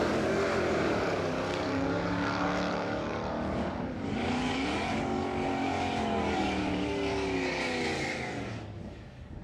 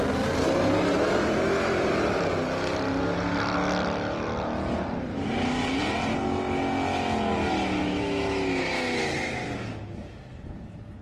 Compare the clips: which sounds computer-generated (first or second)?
first